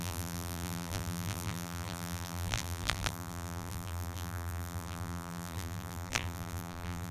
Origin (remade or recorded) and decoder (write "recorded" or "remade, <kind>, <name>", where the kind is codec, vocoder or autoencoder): remade, vocoder, BigVGAN v2